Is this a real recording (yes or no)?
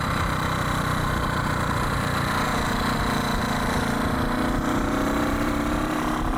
no